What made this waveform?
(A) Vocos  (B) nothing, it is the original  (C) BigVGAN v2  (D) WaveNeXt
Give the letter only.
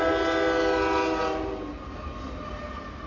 B